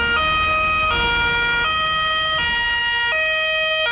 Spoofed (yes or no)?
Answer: no